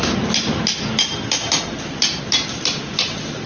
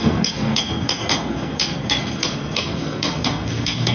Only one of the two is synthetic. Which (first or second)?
second